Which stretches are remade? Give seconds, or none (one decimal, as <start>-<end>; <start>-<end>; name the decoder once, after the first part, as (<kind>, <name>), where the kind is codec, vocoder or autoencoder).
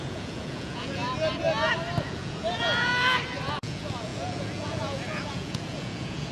0.0-1.0 (vocoder, Vocos); 2.0-2.9; 3.5-6.3